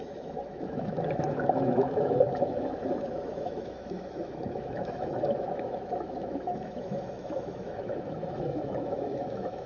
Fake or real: fake